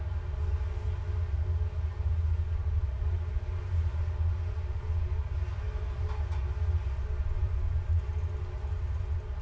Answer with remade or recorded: recorded